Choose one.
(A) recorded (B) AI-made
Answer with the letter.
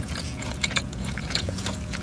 B